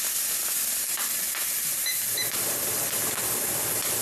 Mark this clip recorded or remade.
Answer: recorded